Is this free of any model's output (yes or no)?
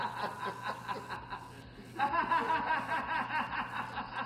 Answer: yes